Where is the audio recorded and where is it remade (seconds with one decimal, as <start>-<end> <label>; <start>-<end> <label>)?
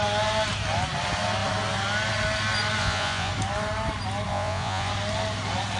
0.0-2.8 recorded; 2.8-3.3 remade; 3.3-4.3 recorded; 4.3-4.9 remade; 4.9-5.8 recorded